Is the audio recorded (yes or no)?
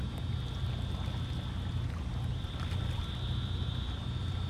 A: yes